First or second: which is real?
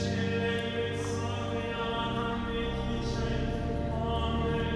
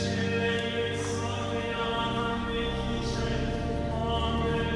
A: first